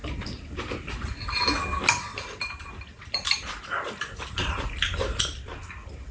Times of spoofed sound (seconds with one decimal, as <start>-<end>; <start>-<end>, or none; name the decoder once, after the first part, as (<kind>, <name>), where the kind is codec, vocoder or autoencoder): 0.0-0.6 (vocoder, BigVGAN v2); 2.1-5.0